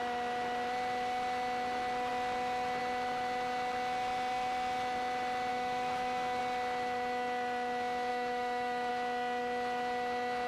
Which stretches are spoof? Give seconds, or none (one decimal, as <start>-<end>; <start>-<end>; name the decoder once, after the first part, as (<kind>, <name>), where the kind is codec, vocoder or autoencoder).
5.5-6.4 (autoencoder, DAC-VAE); 8.1-8.9

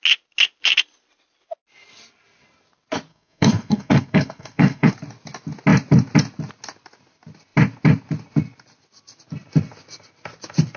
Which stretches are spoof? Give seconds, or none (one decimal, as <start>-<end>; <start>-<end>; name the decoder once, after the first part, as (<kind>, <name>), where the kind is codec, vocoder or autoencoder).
3.1-4.9 (codec, SNAC)

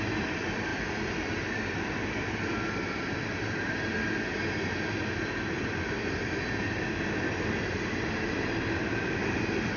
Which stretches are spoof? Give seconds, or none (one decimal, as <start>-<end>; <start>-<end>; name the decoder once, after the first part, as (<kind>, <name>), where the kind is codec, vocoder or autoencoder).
none

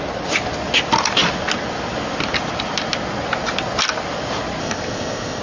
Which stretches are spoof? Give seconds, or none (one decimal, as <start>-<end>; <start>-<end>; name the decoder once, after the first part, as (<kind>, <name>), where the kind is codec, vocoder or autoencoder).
4.6-5.4 (codec, ZipCodec)

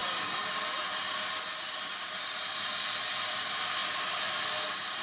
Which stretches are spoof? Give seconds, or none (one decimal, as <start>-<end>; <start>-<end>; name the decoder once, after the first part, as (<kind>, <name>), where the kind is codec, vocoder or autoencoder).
none